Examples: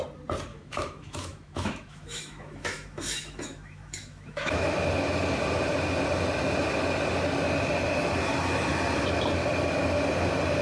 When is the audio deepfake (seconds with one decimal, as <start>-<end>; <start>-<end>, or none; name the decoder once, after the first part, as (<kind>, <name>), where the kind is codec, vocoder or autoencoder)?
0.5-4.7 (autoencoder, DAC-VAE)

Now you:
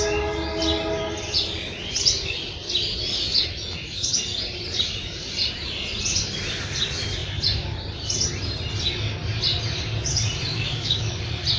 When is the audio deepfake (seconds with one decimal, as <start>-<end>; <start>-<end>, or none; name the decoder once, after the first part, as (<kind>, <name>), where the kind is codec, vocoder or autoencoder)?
3.4-4.1 (autoencoder, DAC-VAE); 10.5-11.2

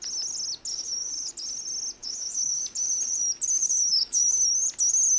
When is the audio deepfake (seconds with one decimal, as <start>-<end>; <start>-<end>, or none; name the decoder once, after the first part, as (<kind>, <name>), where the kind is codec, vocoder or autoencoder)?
0.7-1.3 (autoencoder, DAC-VAE); 2.0-2.6; 3.6-4.3

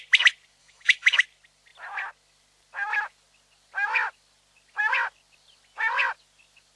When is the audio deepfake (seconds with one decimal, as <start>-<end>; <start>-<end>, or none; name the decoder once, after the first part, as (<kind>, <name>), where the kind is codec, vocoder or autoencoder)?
0.6-1.2 (autoencoder, DAC-VAE)

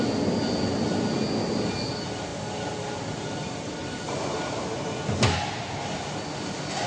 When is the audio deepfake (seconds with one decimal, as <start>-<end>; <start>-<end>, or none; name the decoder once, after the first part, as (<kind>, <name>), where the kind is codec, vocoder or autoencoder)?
none

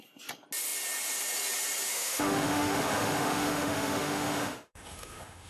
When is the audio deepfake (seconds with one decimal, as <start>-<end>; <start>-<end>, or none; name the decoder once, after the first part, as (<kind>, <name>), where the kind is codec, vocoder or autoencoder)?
1.9-5.5 (autoencoder, DAC-VAE)